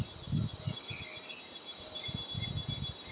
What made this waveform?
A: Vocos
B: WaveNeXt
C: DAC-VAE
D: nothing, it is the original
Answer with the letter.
D